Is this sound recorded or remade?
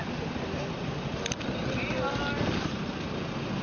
recorded